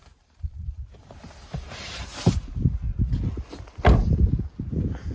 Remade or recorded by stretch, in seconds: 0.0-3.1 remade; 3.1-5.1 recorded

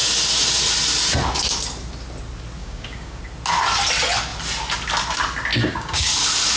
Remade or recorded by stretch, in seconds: 0.0-2.6 recorded; 2.6-3.2 remade; 3.2-5.5 recorded; 5.5-6.1 remade; 6.1-6.6 recorded

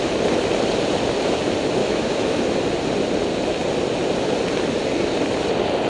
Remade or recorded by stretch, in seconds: 0.0-1.8 recorded; 1.8-2.6 remade; 2.6-5.9 recorded

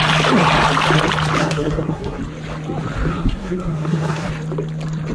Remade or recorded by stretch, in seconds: 0.0-1.4 recorded; 1.4-2.2 remade; 2.2-3.1 recorded; 3.1-4.3 remade; 4.3-5.1 recorded

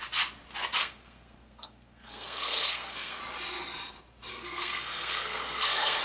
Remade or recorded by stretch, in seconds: 0.0-0.8 recorded; 0.8-3.2 remade; 3.2-4.3 recorded; 4.3-6.0 remade

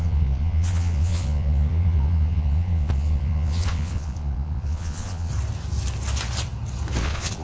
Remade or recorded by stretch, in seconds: 0.0-5.3 remade; 5.3-7.0 recorded; 7.0-7.4 remade